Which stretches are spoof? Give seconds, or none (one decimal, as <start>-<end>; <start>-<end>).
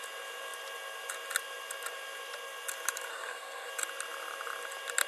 3.1-3.7